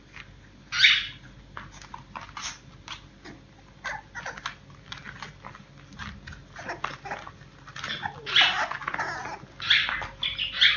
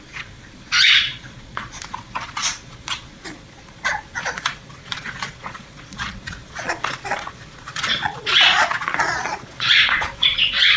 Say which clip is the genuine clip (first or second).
first